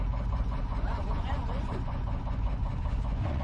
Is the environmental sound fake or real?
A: fake